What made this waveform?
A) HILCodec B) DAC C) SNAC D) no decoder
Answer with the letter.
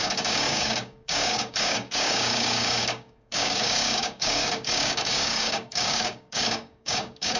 B